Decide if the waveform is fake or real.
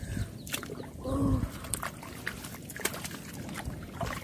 real